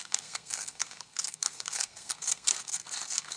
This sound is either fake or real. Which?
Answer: fake